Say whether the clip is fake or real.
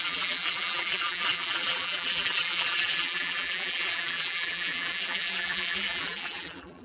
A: fake